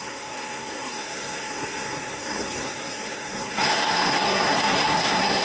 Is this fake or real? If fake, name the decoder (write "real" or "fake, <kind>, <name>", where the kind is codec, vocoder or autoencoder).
fake, codec, SNAC